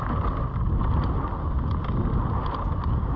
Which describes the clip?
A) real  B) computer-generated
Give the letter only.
A